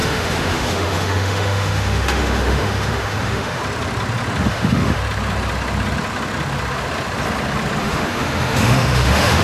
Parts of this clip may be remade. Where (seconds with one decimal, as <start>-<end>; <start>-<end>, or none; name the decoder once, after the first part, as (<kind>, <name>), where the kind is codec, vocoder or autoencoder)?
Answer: 0.0-3.6 (autoencoder, DAC-VAE); 4.4-5.0; 7.8-9.4